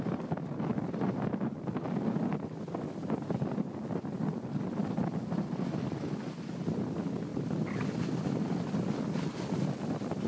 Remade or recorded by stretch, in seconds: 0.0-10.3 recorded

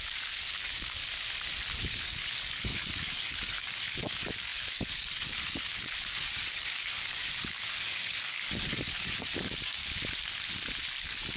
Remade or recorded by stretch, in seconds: 0.0-1.0 remade; 1.0-1.8 recorded; 1.8-9.8 remade; 9.8-11.0 recorded; 11.0-11.4 remade

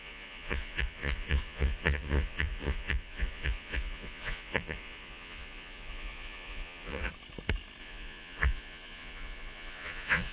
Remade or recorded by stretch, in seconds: 0.0-7.1 remade; 7.1-7.8 recorded; 7.8-10.3 remade

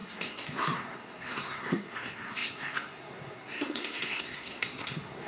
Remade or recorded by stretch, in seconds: 0.0-5.3 remade